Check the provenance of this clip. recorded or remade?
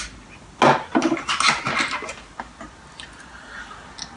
recorded